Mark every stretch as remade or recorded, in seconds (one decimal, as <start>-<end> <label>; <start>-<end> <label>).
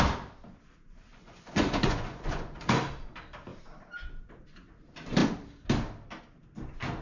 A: 0.0-1.1 recorded; 1.1-2.8 remade; 2.8-7.0 recorded